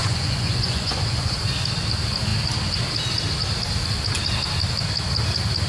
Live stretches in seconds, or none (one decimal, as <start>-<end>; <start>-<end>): 1.4-5.7